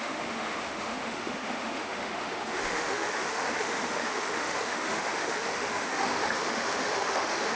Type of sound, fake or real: fake